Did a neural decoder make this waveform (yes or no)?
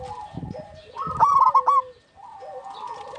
no